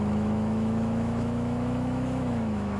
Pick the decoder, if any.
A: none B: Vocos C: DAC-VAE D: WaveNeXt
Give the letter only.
C